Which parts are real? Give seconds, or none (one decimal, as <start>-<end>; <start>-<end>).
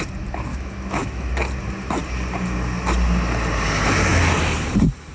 0.0-0.5; 1.3-5.1